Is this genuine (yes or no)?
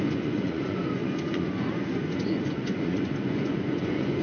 no